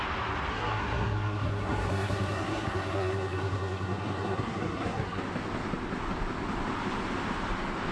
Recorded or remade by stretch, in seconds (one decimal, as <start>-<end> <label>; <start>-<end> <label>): 0.0-0.5 recorded; 0.5-5.2 remade; 5.2-7.9 recorded